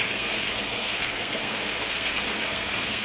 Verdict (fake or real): fake